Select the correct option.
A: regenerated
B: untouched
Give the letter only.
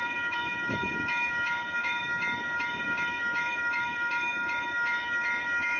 A